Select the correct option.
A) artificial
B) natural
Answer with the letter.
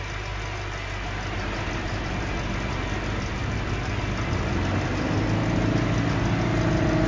B